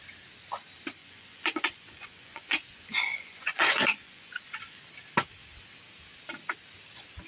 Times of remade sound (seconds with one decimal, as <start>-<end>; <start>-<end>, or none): 1.0-4.8

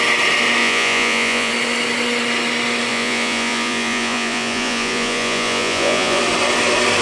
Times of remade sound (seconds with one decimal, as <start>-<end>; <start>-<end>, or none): 0.6-1.5; 2.9-6.2

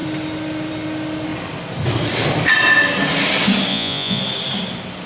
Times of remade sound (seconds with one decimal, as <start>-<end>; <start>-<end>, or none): 3.7-4.2